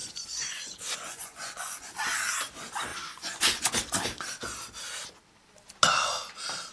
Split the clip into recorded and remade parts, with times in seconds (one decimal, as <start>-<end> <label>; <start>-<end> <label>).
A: 0.0-1.9 remade; 1.9-2.9 recorded; 2.9-3.7 remade; 3.7-6.7 recorded